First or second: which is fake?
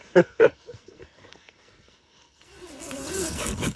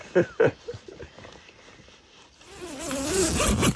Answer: first